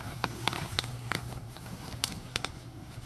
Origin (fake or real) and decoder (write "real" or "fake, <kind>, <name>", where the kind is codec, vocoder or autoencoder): fake, codec, SNAC